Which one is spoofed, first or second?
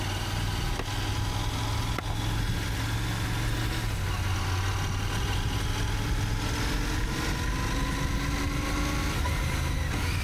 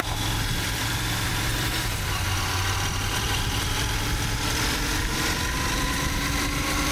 second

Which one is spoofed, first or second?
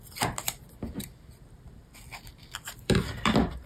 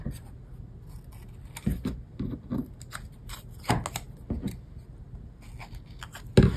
first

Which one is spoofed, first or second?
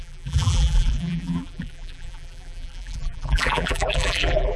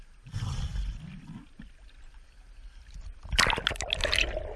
first